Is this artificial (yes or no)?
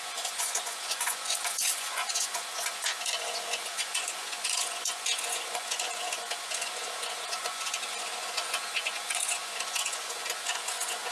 yes